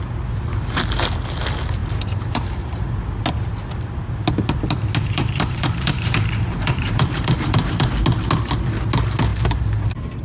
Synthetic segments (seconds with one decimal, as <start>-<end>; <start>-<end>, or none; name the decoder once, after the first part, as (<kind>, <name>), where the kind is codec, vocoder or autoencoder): 1.8-2.9 (vocoder, BigVGAN v2); 5.0-7.9; 9.3-10.2